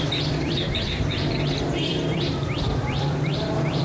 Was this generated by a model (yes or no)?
yes